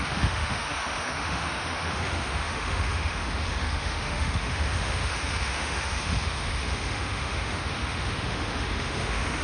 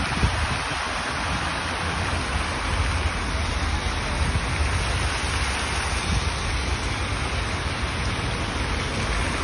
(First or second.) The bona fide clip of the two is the second